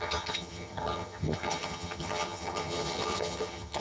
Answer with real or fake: fake